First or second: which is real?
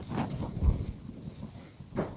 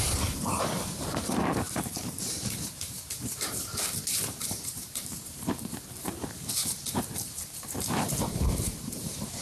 first